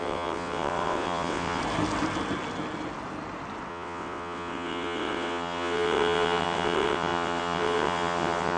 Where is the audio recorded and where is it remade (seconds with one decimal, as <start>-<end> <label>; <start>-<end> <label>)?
0.0-1.6 remade; 1.6-3.7 recorded; 3.7-8.6 remade